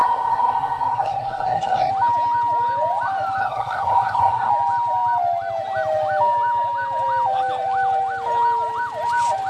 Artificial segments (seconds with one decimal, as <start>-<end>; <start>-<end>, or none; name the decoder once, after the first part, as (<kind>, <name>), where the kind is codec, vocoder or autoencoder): 0.0-1.9 (codec, SNAC); 3.4-4.5